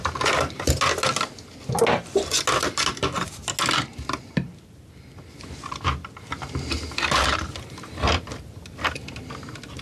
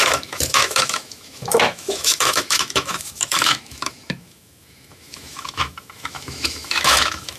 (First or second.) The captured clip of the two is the first